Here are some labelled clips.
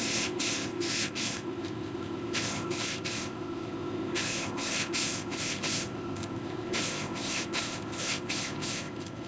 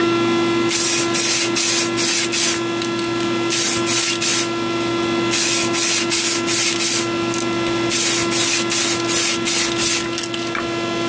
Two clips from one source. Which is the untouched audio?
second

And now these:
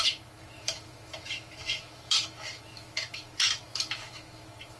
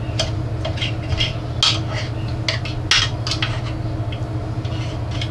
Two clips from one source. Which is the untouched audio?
second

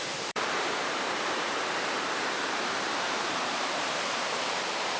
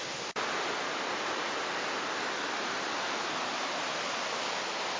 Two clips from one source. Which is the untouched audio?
second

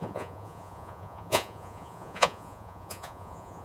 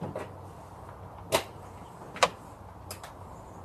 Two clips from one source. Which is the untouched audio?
second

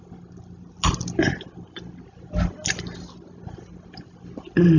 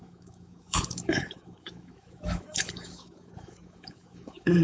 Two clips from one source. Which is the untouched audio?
first